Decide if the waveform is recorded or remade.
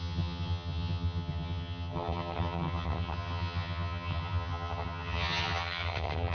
remade